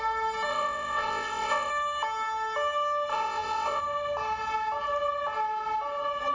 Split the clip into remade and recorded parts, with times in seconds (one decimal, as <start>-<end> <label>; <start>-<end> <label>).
0.0-0.5 recorded; 0.5-1.7 remade; 1.7-3.1 recorded; 3.1-3.8 remade; 3.8-6.3 recorded